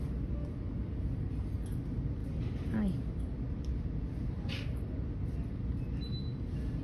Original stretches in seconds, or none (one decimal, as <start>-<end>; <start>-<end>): 0.0-6.8